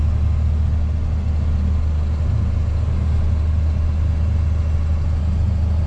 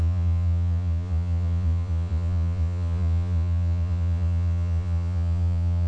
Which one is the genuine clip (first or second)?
first